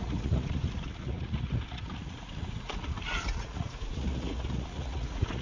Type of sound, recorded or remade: remade